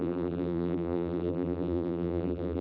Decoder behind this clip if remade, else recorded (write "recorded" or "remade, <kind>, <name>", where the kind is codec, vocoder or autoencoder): remade, vocoder, BigVGAN v2